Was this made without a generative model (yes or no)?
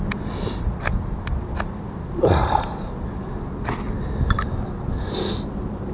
yes